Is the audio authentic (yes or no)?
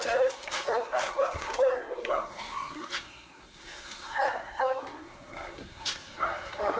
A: no